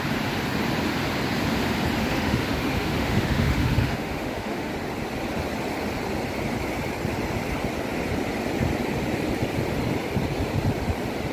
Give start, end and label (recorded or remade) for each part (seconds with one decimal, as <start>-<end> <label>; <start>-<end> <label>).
0.0-2.0 recorded; 2.0-4.7 remade; 4.7-11.3 recorded